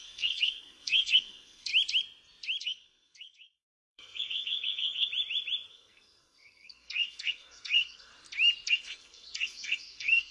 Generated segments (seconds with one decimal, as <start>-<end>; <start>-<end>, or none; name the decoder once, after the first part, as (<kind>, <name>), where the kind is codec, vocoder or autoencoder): 0.0-1.7 (codec, SNAC); 2.6-5.1; 5.7-8.1; 8.7-10.3